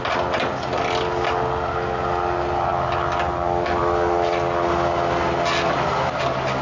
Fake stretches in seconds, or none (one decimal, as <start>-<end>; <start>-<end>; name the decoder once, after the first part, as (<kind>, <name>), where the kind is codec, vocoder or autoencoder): none